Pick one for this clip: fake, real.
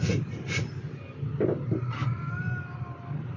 real